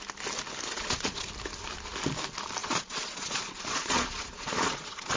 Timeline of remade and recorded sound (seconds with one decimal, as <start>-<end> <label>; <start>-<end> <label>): 0.0-0.7 recorded; 0.7-1.3 remade; 1.3-2.6 recorded; 2.6-5.2 remade